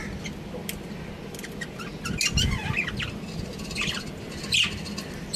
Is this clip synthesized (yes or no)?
no